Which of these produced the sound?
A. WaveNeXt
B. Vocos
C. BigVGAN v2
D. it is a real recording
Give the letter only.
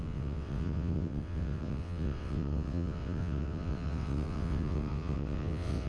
A